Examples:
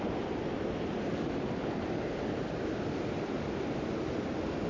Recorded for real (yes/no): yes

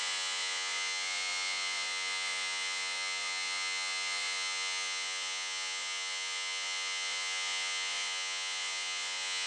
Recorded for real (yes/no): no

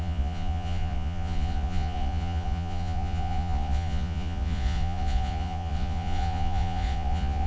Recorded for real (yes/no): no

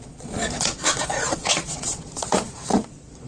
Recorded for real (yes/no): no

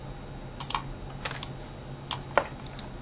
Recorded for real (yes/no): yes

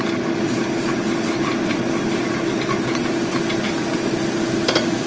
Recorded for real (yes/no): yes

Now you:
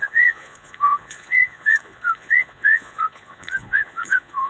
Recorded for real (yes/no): no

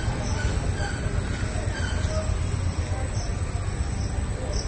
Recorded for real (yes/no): yes